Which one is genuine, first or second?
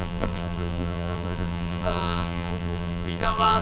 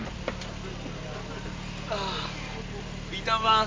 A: second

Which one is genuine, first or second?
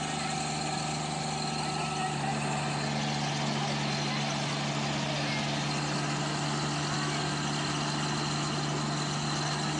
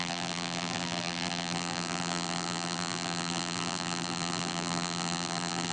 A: first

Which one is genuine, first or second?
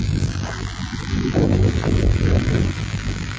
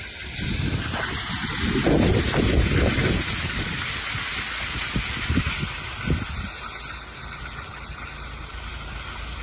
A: second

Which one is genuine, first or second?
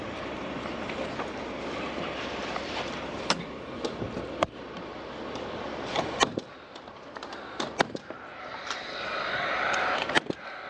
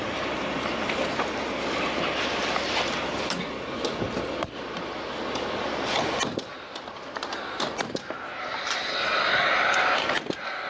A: second